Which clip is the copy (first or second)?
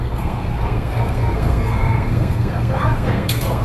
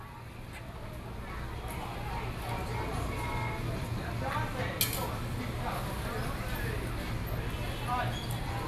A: first